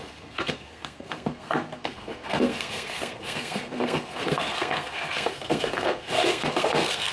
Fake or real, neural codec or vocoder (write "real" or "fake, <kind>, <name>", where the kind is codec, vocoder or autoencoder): fake, codec, SNAC